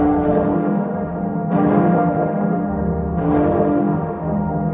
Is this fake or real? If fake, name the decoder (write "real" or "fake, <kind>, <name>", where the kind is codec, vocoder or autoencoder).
fake, autoencoder, DAC-VAE